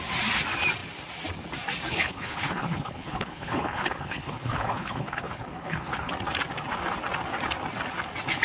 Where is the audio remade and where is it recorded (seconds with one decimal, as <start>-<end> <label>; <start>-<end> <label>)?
0.0-1.9 recorded; 1.9-6.1 remade; 6.1-8.4 recorded